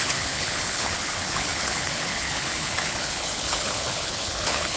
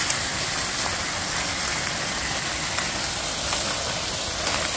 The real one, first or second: second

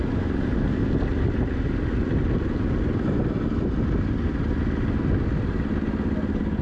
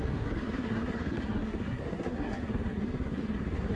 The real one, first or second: first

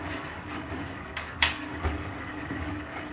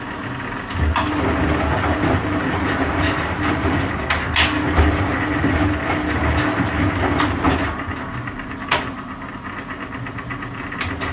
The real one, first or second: second